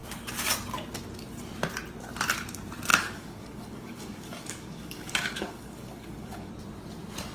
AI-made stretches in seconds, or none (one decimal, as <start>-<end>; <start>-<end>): 2.9-6.5